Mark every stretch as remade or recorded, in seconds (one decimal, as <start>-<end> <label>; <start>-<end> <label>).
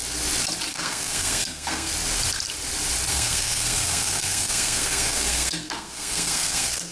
0.0-0.7 recorded; 0.7-1.9 remade; 1.9-3.1 recorded; 3.1-6.9 remade